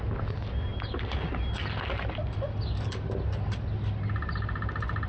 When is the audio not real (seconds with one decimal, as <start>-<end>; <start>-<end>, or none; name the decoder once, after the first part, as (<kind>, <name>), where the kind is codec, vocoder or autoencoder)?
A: none